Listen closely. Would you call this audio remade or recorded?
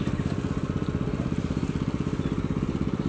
recorded